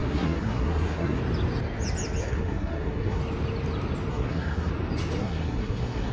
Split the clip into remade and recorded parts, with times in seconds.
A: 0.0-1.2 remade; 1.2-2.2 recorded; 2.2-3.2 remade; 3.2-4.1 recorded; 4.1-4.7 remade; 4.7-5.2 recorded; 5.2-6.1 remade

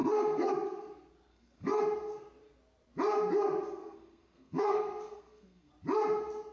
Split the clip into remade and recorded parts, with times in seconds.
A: 0.0-0.5 remade; 0.5-1.3 recorded; 1.3-1.8 remade; 1.8-3.8 recorded; 3.8-5.7 remade; 5.7-6.5 recorded